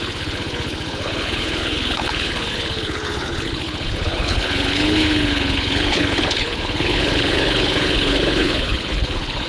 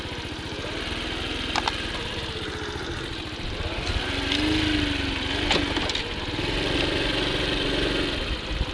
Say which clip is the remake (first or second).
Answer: first